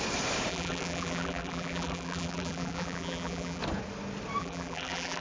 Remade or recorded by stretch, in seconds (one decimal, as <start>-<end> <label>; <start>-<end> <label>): 0.0-0.5 recorded; 0.5-3.6 remade; 3.6-4.4 recorded; 4.4-5.2 remade